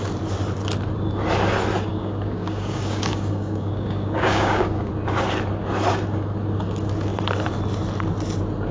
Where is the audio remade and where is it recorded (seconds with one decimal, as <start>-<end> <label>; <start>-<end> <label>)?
0.0-1.9 recorded; 1.9-4.9 remade; 4.9-8.7 recorded